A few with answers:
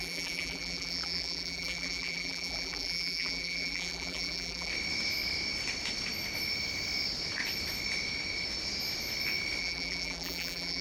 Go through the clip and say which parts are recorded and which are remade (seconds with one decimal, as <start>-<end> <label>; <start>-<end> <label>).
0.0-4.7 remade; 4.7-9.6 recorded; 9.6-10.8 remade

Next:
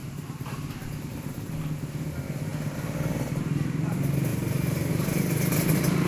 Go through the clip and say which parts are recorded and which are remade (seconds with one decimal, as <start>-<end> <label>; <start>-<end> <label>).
0.0-1.5 remade; 1.5-4.3 recorded; 4.3-4.9 remade; 4.9-6.1 recorded

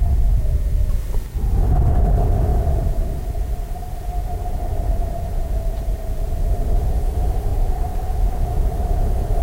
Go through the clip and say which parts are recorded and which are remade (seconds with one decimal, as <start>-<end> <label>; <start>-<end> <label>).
0.0-2.5 recorded; 2.5-3.8 remade; 3.8-4.2 recorded; 4.2-6.1 remade; 6.1-7.5 recorded; 7.5-9.4 remade

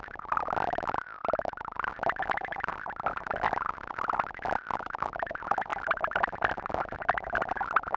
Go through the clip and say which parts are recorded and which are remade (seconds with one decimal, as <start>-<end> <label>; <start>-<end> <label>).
0.0-8.0 recorded

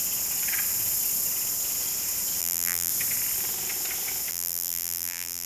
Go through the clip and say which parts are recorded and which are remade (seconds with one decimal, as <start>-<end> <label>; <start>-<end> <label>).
0.0-2.4 recorded; 2.4-2.9 remade; 2.9-4.3 recorded; 4.3-5.5 remade

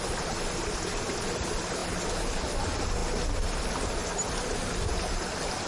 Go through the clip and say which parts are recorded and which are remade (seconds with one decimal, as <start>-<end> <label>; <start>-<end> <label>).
0.0-5.7 recorded

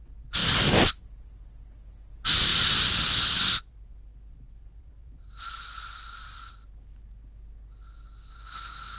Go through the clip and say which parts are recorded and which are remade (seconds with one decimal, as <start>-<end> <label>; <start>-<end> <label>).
0.0-0.4 recorded; 0.4-1.0 remade; 1.0-2.5 recorded; 2.5-6.5 remade; 6.5-9.0 recorded

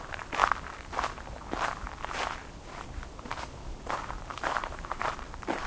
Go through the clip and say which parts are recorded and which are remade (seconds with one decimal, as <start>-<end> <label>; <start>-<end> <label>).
0.0-0.4 remade; 0.4-3.8 recorded; 3.8-5.7 remade